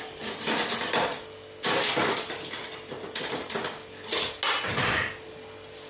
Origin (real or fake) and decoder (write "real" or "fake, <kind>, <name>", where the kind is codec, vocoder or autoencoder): real